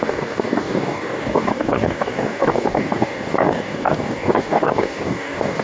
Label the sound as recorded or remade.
remade